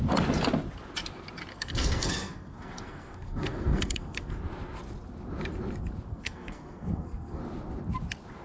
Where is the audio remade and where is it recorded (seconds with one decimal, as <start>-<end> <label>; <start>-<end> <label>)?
0.0-1.5 recorded; 1.5-4.3 remade; 4.3-6.1 recorded; 6.1-7.4 remade; 7.4-8.4 recorded